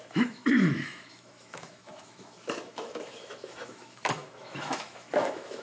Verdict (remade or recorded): remade